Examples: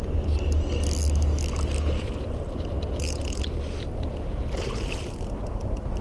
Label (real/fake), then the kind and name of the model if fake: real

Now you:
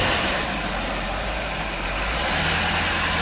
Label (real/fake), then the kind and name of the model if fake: real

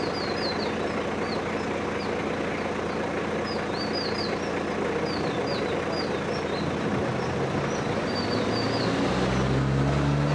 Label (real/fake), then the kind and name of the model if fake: real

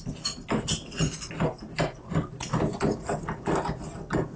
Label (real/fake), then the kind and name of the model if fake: real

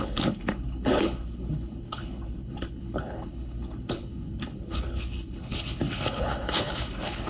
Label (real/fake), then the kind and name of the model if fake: fake, codec, HILCodec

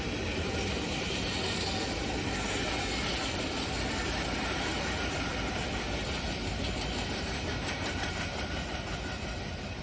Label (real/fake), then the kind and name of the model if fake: real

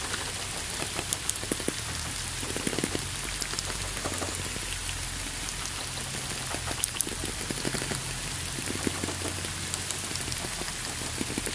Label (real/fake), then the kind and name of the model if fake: real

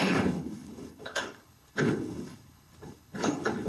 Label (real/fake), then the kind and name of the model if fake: fake, codec, HILCodec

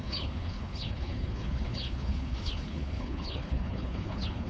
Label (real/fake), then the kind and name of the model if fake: fake, codec, HILCodec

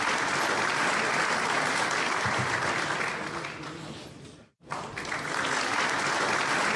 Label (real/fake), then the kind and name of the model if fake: real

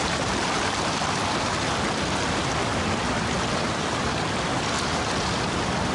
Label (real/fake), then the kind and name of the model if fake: real